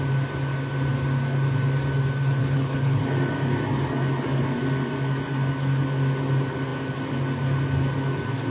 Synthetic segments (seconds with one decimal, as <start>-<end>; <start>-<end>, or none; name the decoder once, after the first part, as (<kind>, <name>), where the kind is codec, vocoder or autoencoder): 2.4-3.0 (codec, HILCodec)